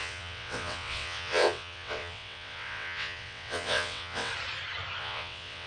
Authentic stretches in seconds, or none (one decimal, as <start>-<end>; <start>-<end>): 4.3-5.0

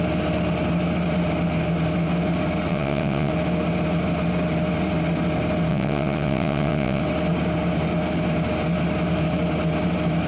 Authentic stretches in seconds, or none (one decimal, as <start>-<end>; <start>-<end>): 0.0-2.7; 3.3-5.7; 7.0-10.3

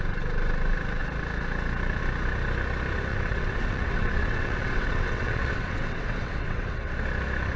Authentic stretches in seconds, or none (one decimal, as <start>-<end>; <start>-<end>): 0.0-3.1; 6.9-7.6

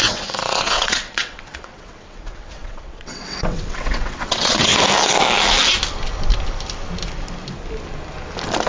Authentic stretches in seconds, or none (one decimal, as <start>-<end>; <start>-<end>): 4.7-8.7

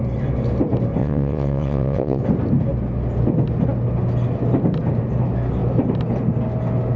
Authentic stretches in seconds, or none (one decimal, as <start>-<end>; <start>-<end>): 0.0-1.0; 2.2-7.0

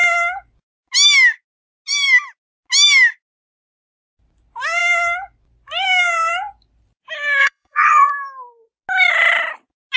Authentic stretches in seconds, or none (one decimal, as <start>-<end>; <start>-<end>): 0.0-7.4; 8.1-10.0